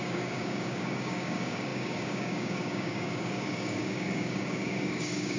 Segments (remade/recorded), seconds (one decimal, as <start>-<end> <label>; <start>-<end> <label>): 0.0-5.4 remade